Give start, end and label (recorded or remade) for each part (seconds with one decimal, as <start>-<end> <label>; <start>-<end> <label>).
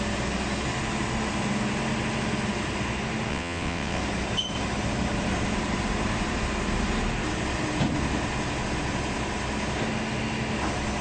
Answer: 0.0-3.3 recorded; 3.3-4.0 remade; 4.0-11.0 recorded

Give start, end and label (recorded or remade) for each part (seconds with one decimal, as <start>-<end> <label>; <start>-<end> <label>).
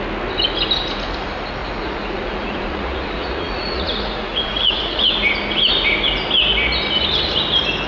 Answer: 0.0-1.6 recorded; 1.6-5.1 remade; 5.1-7.9 recorded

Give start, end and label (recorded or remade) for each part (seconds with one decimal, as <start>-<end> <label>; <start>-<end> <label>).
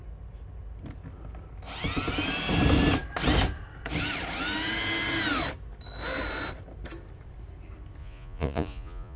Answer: 0.0-8.0 recorded; 8.0-9.2 remade